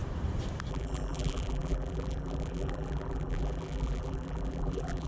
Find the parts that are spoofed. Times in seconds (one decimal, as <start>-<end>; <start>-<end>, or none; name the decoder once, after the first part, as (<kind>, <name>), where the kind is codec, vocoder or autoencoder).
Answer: 0.7-5.1 (vocoder, BigVGAN v2)